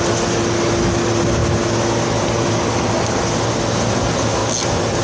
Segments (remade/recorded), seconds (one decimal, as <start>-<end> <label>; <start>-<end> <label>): 0.0-5.0 recorded